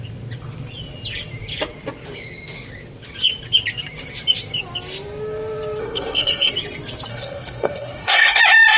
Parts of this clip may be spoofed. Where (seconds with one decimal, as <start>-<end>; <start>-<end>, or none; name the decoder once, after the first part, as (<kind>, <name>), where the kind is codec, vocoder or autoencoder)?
5.8-6.5 (codec, SNAC); 7.1-8.4